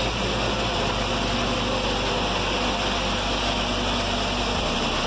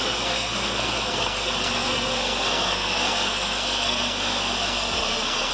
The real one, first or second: first